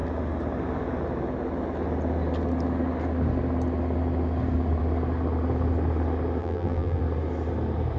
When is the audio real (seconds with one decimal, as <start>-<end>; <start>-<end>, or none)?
0.0-6.4; 7.0-8.0